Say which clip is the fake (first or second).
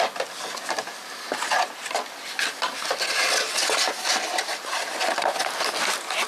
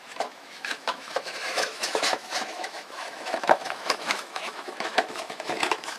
second